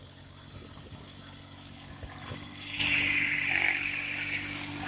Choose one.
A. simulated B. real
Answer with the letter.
A